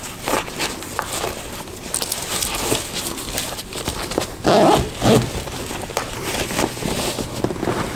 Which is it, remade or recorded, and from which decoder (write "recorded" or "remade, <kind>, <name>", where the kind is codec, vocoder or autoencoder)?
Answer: recorded